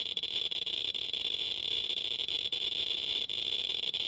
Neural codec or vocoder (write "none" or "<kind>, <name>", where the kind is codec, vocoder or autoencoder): vocoder, BigVGAN v2